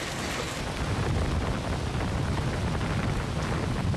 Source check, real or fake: real